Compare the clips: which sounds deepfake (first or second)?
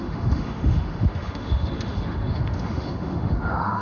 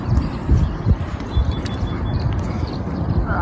first